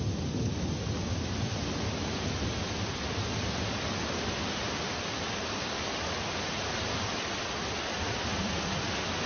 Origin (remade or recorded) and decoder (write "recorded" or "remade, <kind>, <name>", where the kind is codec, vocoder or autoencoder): recorded